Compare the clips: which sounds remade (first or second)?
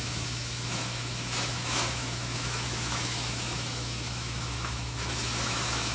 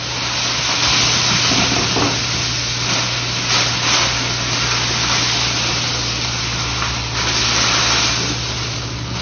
first